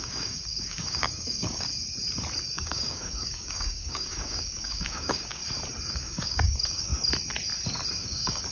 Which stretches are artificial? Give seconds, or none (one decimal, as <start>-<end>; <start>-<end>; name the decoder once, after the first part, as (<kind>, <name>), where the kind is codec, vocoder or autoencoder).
0.0-1.7 (codec, DAC); 2.4-5.4; 5.9-6.9; 7.9-8.5